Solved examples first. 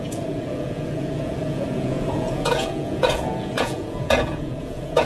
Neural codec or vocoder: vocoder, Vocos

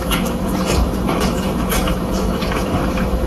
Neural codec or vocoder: autoencoder, DAC-VAE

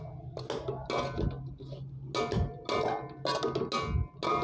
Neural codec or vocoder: none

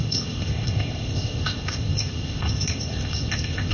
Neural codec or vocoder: codec, ZipCodec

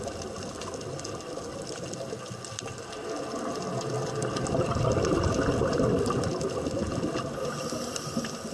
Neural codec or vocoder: none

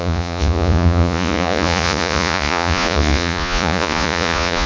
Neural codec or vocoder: vocoder, Vocos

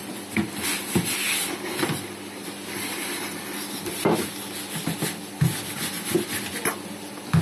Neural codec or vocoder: none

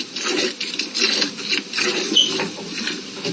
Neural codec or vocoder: none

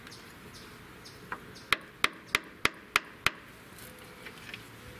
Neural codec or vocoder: none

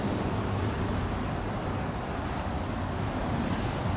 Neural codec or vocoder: none